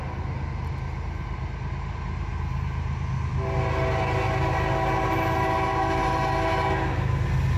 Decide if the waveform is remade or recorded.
recorded